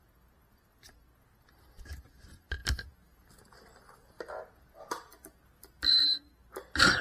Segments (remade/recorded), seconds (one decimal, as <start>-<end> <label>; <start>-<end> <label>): 0.0-7.0 recorded